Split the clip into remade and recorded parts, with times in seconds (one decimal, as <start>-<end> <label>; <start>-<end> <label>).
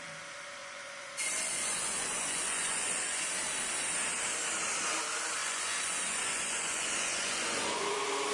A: 0.0-0.6 recorded; 0.6-3.2 remade; 3.2-5.4 recorded; 5.4-7.9 remade; 7.9-8.3 recorded